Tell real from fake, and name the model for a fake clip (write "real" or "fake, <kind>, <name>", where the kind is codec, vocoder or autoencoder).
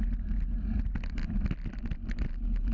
real